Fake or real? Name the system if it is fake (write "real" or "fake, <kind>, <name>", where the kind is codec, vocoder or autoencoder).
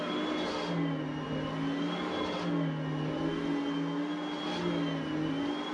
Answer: real